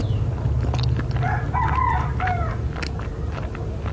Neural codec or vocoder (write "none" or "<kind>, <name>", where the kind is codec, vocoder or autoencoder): none